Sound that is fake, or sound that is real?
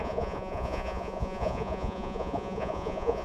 fake